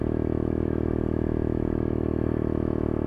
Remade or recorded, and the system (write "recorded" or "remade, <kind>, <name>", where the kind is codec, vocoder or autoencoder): remade, autoencoder, DAC-VAE